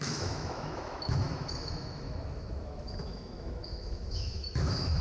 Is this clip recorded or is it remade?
remade